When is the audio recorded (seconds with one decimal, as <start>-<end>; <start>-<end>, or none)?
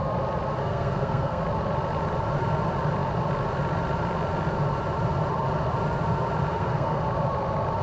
0.0-0.6; 1.4-6.5; 7.0-7.8